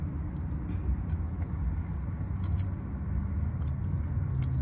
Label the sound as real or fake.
real